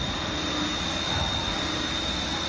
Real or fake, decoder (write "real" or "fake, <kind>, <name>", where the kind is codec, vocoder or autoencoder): real